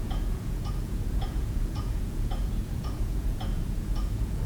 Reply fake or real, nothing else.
fake